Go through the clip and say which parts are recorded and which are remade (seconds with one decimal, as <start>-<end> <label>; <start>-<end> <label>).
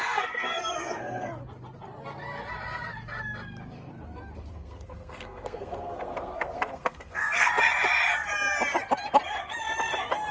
0.0-1.3 remade; 1.3-4.5 recorded; 4.5-7.5 remade; 7.5-10.3 recorded